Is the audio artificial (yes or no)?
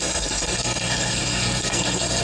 yes